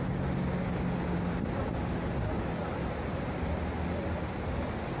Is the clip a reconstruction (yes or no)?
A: no